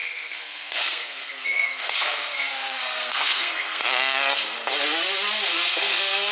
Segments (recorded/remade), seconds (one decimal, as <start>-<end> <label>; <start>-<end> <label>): 0.0-3.8 remade; 3.8-5.5 recorded; 5.5-6.3 remade

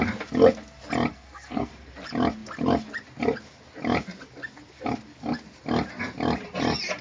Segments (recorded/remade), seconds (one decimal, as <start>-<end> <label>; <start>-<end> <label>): 0.0-1.1 recorded; 1.1-1.7 remade; 1.7-7.0 recorded